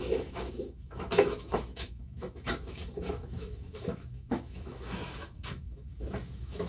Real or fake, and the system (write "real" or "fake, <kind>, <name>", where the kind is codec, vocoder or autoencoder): fake, autoencoder, DAC-VAE